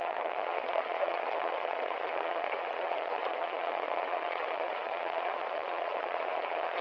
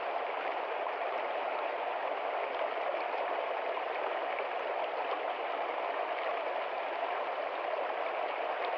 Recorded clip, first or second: second